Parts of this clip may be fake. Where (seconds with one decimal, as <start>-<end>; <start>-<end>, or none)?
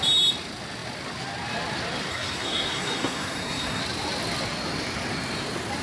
2.1-3.8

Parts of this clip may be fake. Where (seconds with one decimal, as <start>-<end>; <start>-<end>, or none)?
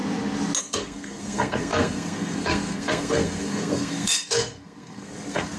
0.6-5.6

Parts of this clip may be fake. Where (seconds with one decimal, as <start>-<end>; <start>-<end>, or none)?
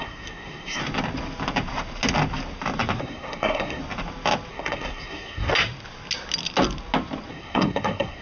0.0-0.8; 3.0-3.8; 4.5-5.5; 7.3-8.2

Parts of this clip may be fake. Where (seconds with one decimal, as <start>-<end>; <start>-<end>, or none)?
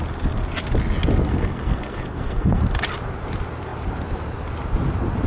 1.3-2.6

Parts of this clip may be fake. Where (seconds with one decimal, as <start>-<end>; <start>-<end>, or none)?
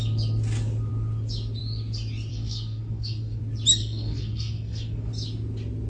2.3-3.4; 3.8-5.1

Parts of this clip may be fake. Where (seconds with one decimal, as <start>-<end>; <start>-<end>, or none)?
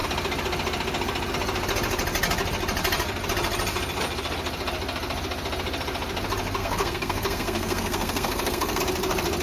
6.6-8.8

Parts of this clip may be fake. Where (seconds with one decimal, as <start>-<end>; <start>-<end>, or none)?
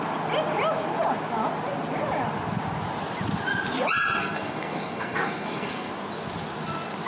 4.2-5.9